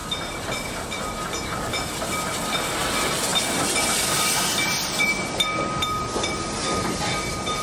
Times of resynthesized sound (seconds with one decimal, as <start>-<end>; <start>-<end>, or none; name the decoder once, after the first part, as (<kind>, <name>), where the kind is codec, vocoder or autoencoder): 0.0-1.8 (vocoder, BigVGAN v2); 3.3-6.3